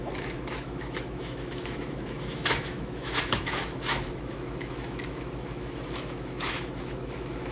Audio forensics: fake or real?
fake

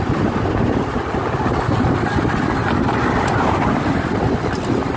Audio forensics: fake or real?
real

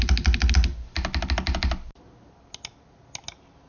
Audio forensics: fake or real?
real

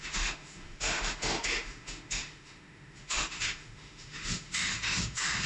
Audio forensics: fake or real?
fake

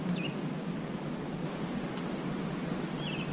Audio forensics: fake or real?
real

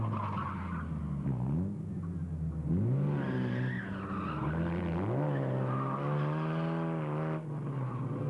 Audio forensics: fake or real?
real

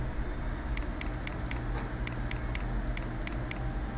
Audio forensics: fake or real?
real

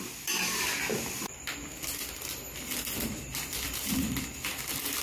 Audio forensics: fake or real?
real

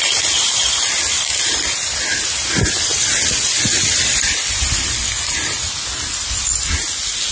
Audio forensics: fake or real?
real